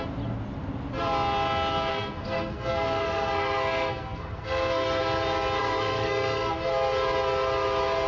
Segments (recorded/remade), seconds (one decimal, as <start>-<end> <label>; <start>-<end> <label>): 0.0-1.9 recorded; 1.9-5.0 remade; 5.0-5.6 recorded; 5.6-6.5 remade; 6.5-8.1 recorded